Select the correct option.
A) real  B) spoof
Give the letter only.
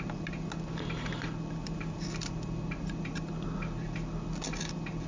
A